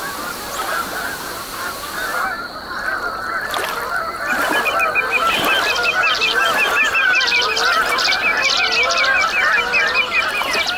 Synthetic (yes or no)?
no